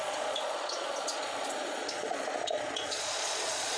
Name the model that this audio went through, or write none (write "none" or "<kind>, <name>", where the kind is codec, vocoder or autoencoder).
vocoder, Vocos